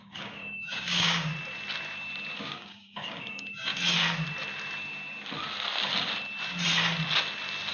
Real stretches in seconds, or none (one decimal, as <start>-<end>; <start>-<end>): 1.3-2.4; 3.7-7.7